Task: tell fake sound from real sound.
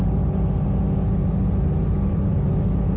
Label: real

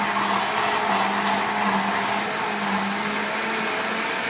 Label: real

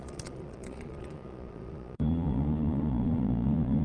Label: fake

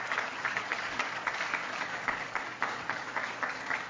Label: fake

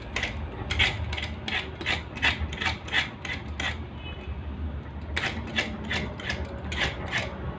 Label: real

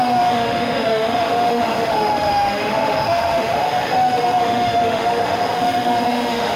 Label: fake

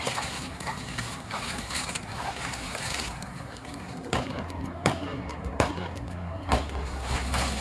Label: fake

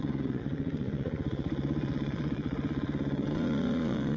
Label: fake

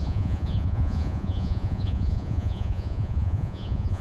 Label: fake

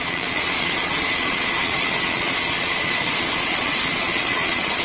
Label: fake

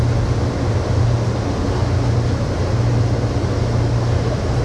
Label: real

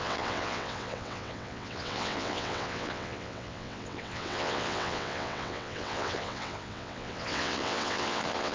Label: fake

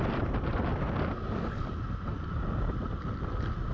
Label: real